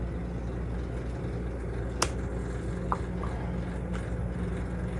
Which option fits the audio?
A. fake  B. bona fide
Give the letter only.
B